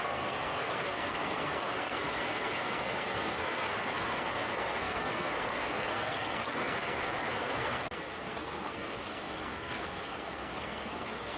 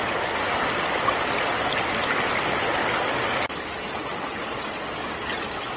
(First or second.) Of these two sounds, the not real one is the first